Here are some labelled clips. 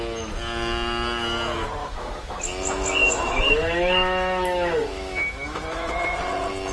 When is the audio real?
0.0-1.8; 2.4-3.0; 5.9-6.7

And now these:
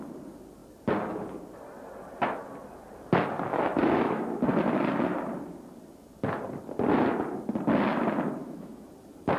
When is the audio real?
0.0-3.5; 4.2-8.4; 8.9-9.4